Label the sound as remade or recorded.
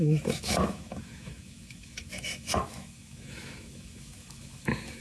remade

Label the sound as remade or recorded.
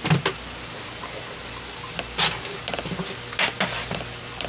recorded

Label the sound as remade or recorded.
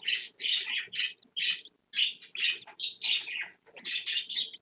recorded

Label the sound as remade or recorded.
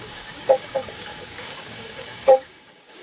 remade